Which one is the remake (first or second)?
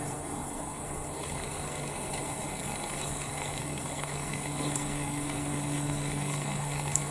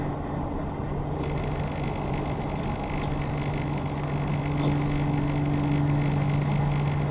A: first